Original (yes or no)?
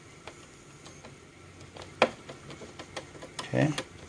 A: yes